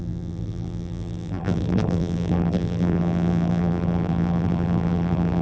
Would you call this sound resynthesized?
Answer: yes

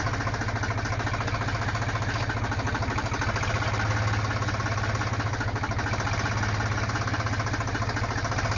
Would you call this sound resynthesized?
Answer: no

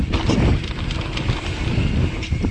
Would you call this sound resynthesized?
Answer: no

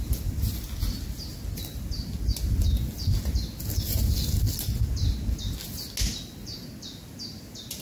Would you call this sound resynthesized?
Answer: no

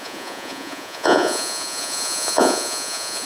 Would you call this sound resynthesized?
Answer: yes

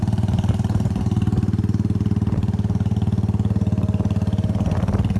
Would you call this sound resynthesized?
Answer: yes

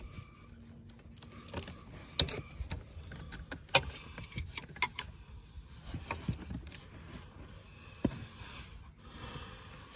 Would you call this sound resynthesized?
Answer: no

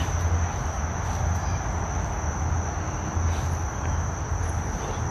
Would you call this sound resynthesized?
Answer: no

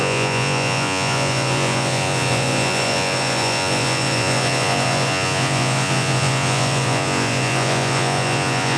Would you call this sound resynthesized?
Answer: yes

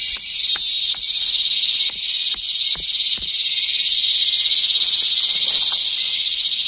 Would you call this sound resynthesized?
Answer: no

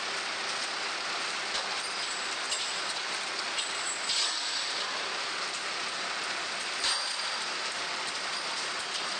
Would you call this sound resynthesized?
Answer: no